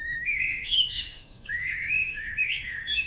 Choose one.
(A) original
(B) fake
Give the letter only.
B